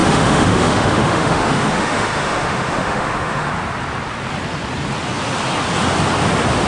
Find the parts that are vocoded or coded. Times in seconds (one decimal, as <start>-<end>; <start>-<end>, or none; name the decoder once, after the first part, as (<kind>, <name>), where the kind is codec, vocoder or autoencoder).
0.0-3.5 (autoencoder, DAC-VAE)